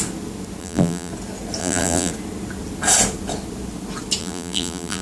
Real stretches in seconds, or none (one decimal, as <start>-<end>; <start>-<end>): 0.0-0.6; 1.1-1.6; 2.1-4.2